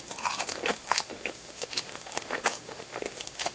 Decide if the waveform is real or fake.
fake